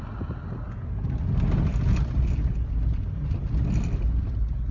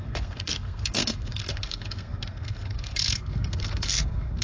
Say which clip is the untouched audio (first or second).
first